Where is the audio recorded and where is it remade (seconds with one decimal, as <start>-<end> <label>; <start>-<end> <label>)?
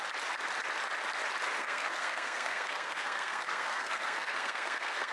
0.0-1.6 recorded; 1.6-5.1 remade